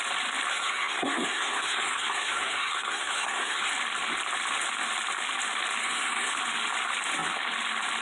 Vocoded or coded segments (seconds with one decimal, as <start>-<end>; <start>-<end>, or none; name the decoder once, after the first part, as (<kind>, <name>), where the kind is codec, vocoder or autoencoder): 0.5-3.7 (codec, SNAC); 5.8-6.3